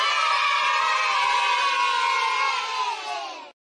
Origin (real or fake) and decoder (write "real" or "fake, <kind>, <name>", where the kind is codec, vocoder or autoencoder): real